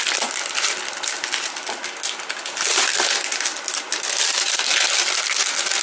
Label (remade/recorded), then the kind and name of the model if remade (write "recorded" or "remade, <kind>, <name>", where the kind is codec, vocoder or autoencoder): recorded